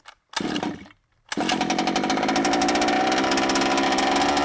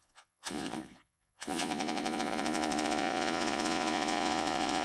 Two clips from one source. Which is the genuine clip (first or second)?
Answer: first